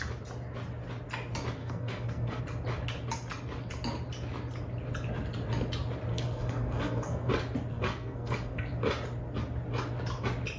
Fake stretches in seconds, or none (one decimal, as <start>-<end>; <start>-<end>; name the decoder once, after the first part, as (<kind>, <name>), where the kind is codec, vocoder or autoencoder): 1.6-2.4 (codec, SNAC); 6.1-7.3; 7.7-8.7